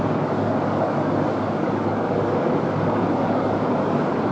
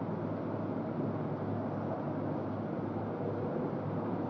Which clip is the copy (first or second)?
first